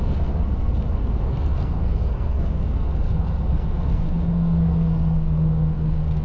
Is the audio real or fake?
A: fake